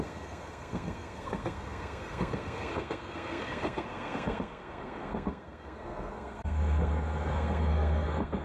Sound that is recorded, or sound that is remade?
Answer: remade